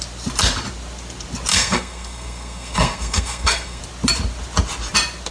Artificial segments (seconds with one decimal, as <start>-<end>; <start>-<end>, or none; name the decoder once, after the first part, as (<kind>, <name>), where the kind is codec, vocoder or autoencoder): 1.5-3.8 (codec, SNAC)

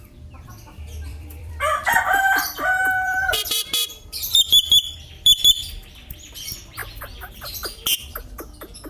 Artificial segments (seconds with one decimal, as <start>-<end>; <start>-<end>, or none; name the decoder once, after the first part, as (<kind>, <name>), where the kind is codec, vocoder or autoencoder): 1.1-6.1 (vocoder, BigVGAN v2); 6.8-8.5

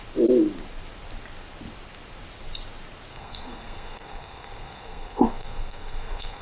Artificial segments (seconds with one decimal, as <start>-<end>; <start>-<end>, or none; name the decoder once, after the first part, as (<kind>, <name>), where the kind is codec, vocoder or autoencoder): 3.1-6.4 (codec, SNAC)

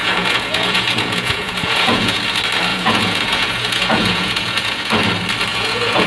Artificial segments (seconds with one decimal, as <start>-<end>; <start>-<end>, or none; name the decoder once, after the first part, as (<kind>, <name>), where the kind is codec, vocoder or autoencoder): 0.0-2.2 (vocoder, Vocos); 2.7-4.9; 5.5-6.1

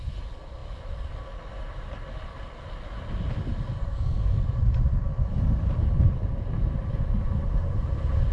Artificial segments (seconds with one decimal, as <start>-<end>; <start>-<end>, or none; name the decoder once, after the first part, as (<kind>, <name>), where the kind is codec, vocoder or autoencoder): 3.8-4.4 (codec, SNAC)